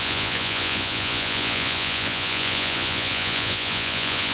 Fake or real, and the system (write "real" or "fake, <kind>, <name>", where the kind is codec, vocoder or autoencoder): fake, vocoder, Vocos